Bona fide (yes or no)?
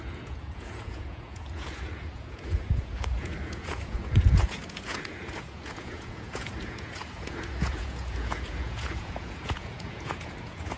no